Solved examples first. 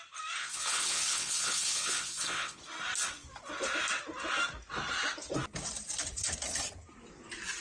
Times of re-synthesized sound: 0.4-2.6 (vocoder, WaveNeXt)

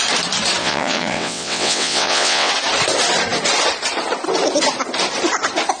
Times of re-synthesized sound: 0.6-2.5 (vocoder, WaveNeXt)

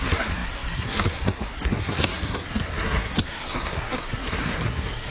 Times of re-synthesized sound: 0.0-5.1 (codec, SNAC)